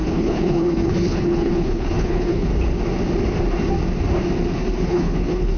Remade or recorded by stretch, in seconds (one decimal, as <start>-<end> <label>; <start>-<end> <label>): 0.0-2.5 remade; 2.5-4.9 recorded; 4.9-5.6 remade